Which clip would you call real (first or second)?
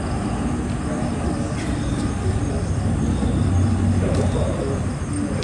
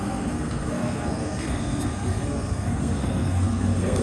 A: first